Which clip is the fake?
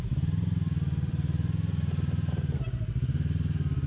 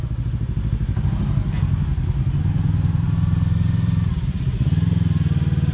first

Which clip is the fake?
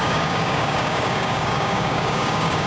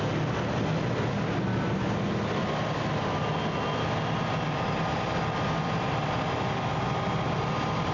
first